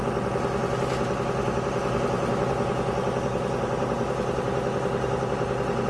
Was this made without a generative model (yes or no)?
yes